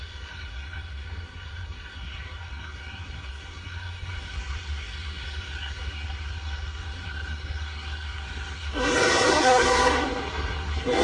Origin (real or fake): fake